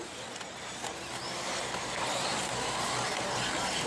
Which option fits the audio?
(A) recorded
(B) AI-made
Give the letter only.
A